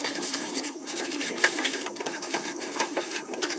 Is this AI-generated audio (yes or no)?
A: yes